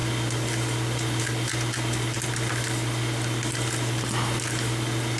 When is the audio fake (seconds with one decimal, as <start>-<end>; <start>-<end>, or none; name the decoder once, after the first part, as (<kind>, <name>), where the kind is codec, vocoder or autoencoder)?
none

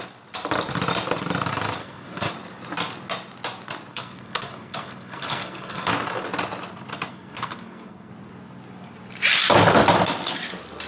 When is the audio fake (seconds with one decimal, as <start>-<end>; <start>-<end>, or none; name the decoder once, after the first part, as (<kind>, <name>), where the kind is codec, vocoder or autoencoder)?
1.8-2.3 (codec, SNAC); 3.9-5.9; 7.1-8.1

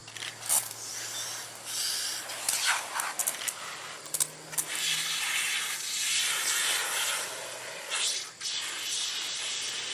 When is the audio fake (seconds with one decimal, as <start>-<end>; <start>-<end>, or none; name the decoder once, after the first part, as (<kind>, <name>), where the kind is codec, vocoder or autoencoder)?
none

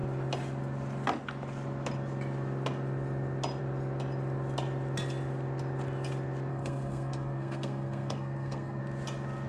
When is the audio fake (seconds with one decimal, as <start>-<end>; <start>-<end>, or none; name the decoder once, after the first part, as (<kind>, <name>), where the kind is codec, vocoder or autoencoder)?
6.5-8.8 (codec, SNAC)

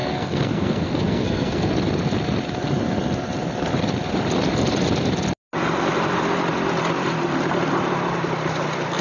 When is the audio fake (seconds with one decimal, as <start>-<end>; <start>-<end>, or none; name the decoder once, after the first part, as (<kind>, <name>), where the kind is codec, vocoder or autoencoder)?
0.0-1.7 (codec, SNAC)

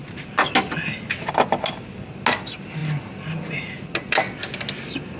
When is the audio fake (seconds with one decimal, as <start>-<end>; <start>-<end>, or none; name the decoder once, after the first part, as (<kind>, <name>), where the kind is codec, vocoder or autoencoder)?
none